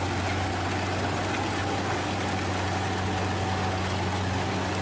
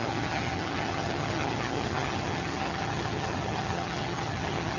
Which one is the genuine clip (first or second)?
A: first